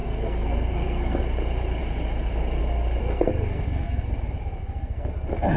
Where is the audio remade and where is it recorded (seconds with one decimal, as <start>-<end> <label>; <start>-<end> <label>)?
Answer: 0.0-1.2 remade; 1.2-3.0 recorded; 3.0-4.1 remade; 4.1-4.6 recorded; 4.6-5.1 remade; 5.1-5.6 recorded

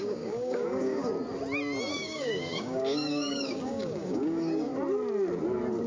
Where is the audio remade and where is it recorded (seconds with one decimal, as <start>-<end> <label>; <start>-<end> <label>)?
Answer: 0.0-1.1 remade; 1.1-1.9 recorded; 1.9-4.7 remade; 4.7-5.9 recorded

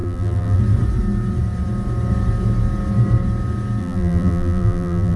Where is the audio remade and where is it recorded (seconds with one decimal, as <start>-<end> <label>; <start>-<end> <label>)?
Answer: 0.0-0.6 remade; 0.6-3.8 recorded; 3.8-5.2 remade

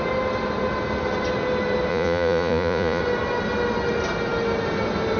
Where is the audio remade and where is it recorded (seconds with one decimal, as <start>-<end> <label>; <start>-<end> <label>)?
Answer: 0.0-1.9 recorded; 1.9-3.0 remade; 3.0-5.2 recorded

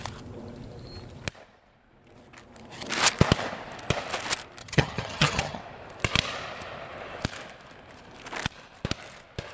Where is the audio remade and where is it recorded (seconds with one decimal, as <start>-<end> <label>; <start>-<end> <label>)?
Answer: 0.0-4.6 recorded; 4.6-5.6 remade; 5.6-9.5 recorded

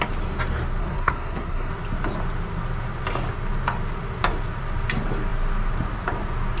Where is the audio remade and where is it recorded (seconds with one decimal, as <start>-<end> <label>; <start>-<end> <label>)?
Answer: 0.0-0.8 recorded; 0.8-1.7 remade; 1.7-6.6 recorded